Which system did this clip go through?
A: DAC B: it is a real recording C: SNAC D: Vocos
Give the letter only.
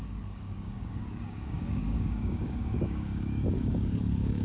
A